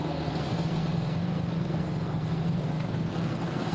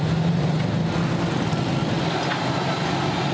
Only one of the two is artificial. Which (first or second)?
first